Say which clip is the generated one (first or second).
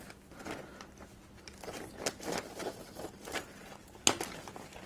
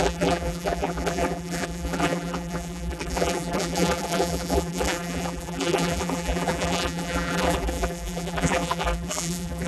second